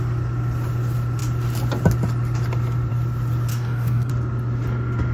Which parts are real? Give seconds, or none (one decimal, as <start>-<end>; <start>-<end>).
0.0-3.5; 4.1-5.1